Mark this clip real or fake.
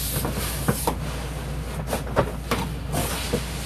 real